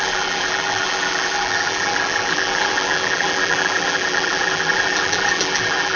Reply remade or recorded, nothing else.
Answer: remade